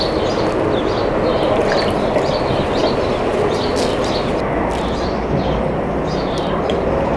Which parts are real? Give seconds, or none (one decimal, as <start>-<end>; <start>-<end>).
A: 0.0-7.2